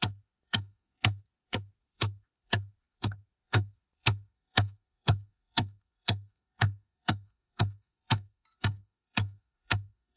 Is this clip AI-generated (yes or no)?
yes